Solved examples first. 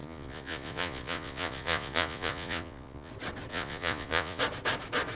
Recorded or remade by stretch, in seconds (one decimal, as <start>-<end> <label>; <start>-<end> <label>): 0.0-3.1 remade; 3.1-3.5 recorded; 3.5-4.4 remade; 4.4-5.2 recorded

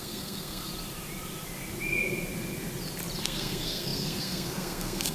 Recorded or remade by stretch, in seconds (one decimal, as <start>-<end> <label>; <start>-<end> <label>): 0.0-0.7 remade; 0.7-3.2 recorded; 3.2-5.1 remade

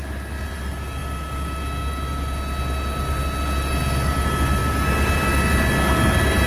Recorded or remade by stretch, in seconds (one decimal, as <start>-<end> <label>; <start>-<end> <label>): 0.0-6.5 recorded

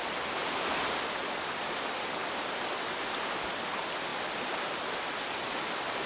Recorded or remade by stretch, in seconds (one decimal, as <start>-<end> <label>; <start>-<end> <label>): 0.0-6.1 recorded

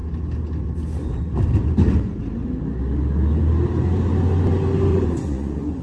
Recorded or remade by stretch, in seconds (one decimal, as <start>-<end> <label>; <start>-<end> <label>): 0.0-4.9 recorded; 4.9-5.8 remade